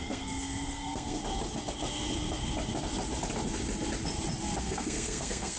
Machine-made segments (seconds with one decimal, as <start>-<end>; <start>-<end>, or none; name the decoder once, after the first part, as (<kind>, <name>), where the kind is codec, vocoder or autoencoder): 0.0-1.2 (codec, SNAC); 4.6-5.6